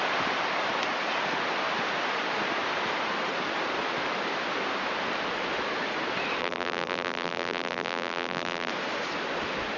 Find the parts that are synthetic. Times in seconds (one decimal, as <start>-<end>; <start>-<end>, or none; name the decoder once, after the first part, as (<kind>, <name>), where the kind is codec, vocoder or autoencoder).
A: 6.4-8.7 (vocoder, BigVGAN v2)

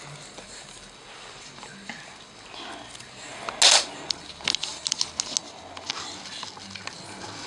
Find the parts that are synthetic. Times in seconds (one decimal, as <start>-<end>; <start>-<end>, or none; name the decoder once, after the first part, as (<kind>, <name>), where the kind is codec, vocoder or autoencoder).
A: none

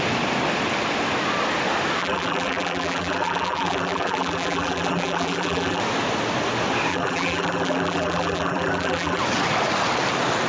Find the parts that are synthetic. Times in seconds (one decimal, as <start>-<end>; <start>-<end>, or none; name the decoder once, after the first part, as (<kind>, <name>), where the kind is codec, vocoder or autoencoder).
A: 2.0-5.8 (vocoder, BigVGAN v2); 6.9-9.2

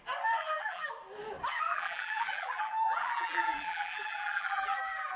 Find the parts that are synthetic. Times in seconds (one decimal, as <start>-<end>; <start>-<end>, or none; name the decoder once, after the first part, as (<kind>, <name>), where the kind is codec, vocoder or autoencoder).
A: 0.4-0.9 (vocoder, BigVGAN v2); 1.7-4.8

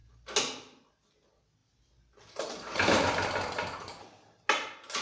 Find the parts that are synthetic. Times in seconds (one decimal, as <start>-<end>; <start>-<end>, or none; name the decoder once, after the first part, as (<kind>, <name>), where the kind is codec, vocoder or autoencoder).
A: none

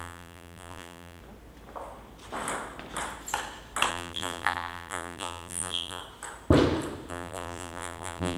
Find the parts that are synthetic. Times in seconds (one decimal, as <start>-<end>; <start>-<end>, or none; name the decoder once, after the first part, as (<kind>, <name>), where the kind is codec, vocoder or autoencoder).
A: 0.0-1.2 (vocoder, BigVGAN v2); 3.9-6.0; 7.1-8.4

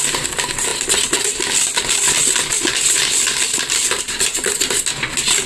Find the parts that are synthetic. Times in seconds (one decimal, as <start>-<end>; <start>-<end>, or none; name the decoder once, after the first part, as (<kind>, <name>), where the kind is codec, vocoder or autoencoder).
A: 0.7-4.0 (vocoder, BigVGAN v2)